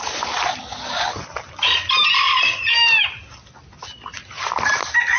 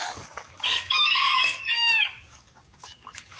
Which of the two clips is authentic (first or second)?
first